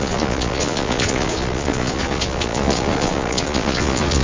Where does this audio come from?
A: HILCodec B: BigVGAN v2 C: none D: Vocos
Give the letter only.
D